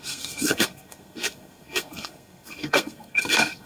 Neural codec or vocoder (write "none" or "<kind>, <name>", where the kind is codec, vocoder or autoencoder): codec, SNAC